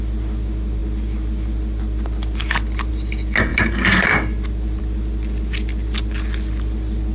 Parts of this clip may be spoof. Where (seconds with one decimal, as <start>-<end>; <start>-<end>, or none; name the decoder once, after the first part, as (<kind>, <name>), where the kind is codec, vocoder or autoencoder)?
none